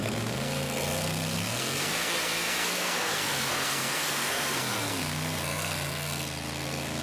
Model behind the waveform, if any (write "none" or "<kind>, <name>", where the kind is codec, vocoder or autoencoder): codec, SNAC